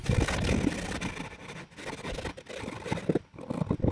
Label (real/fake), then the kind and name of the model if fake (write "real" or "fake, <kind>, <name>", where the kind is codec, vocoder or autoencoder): real